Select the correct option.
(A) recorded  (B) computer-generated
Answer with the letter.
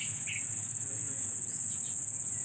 B